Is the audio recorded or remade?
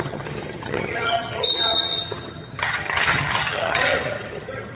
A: remade